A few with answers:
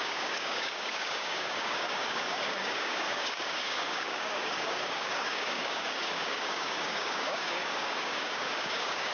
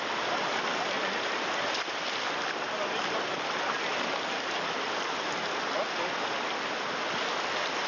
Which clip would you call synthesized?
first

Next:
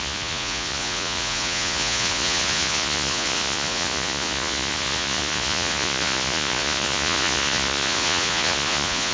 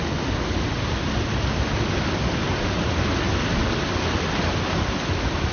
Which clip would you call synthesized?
first